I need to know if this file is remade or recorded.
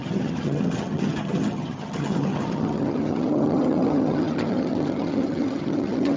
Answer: remade